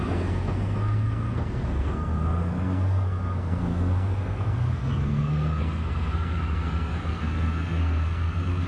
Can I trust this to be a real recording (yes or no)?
no